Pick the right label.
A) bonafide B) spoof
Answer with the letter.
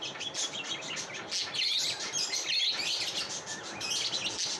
A